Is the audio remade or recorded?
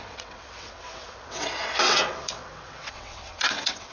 remade